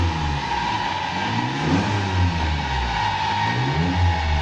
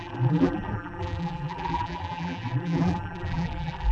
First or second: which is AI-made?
second